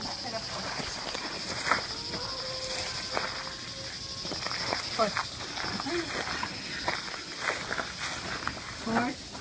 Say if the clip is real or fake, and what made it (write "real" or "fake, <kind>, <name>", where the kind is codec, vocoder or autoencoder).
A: real